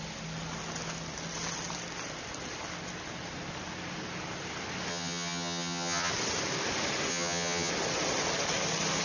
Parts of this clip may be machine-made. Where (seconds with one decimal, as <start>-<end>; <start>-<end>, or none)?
4.9-6.1; 7.1-7.7